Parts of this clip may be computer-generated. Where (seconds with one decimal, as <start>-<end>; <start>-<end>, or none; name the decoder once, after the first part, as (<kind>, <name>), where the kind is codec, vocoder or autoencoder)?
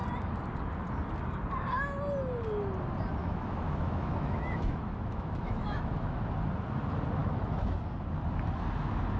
3.2-6.2 (autoencoder, DAC-VAE); 7.2-7.8